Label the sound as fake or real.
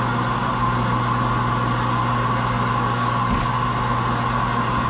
real